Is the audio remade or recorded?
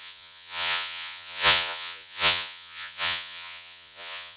remade